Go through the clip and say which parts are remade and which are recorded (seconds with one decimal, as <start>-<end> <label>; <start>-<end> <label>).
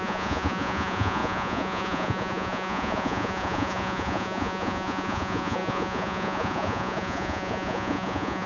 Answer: 0.0-8.5 remade